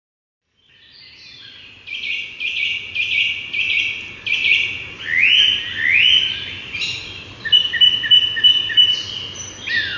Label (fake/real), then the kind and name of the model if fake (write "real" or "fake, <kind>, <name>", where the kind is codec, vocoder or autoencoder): real